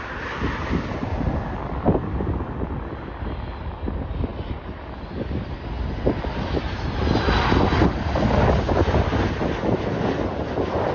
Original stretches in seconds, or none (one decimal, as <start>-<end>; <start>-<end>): 0.0-10.9